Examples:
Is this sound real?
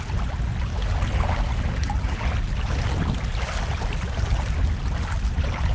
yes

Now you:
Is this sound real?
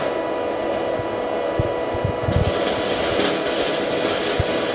yes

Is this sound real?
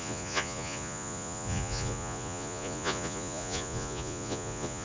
no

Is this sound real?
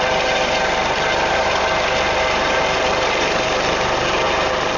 yes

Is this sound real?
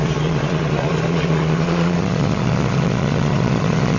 no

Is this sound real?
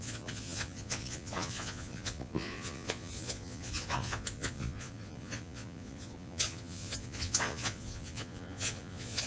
no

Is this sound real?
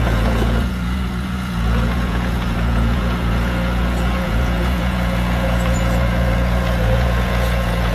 no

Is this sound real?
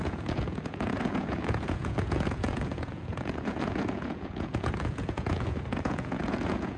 no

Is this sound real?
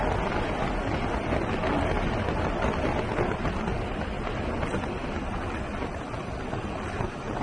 yes